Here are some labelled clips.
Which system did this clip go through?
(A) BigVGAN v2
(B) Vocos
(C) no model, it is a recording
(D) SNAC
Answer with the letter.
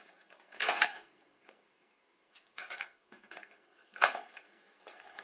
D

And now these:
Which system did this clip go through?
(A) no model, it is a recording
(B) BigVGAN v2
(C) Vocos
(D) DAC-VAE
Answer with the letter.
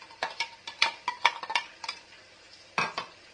B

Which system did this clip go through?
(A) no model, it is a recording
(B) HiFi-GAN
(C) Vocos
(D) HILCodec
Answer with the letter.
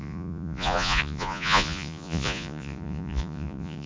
C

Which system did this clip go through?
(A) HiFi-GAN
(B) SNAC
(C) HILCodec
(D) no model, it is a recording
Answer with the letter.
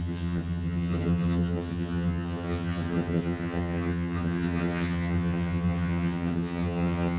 A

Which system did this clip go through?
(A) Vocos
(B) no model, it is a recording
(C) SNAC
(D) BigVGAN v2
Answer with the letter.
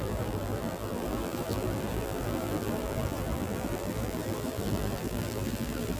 D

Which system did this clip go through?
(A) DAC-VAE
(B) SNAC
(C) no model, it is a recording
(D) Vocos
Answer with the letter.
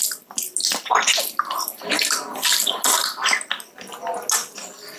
C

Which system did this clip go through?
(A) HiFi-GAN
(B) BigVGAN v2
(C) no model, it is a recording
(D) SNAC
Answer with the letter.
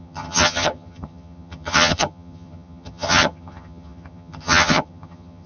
A